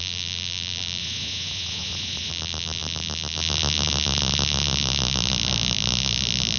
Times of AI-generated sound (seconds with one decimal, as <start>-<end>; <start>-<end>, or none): 1.0-2.3